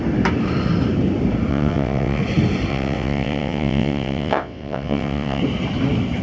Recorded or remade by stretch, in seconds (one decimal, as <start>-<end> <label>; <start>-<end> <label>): 0.0-1.5 recorded; 1.5-2.2 remade; 2.2-2.7 recorded; 2.7-5.4 remade; 5.4-6.2 recorded